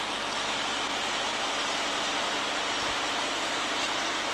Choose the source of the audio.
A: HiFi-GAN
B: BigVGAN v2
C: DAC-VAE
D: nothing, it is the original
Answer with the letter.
D